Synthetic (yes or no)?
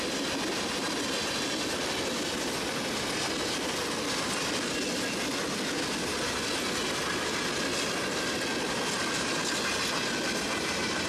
no